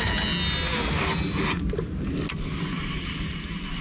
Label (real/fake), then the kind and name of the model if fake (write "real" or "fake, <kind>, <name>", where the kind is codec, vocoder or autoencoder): real